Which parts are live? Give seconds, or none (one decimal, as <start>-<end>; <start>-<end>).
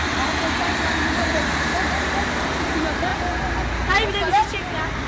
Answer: 3.1-3.9